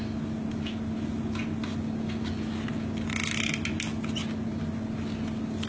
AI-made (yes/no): no